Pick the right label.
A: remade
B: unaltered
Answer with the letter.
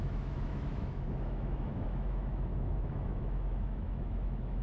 A